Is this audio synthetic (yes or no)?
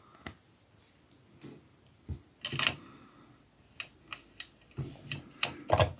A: no